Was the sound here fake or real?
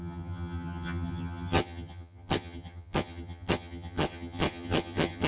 fake